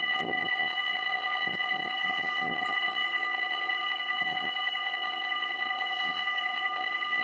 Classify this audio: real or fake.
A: fake